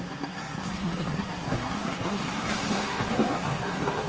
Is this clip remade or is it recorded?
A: remade